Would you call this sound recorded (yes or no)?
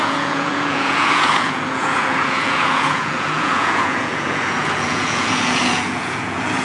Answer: no